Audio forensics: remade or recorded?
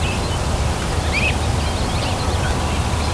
recorded